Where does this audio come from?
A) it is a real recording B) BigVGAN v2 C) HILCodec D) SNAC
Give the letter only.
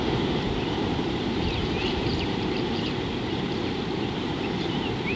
B